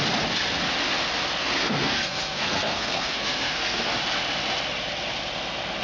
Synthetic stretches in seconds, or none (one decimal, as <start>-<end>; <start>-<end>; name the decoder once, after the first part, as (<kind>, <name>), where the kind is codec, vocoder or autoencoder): 1.4-3.9 (codec, SNAC)